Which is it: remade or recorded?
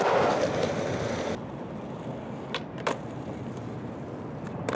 remade